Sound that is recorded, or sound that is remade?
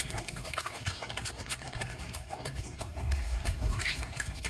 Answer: remade